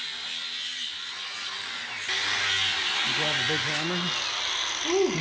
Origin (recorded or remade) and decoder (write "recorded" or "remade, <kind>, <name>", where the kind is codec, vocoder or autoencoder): recorded